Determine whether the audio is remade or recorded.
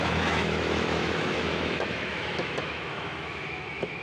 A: remade